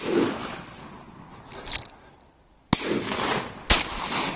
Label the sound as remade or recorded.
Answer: recorded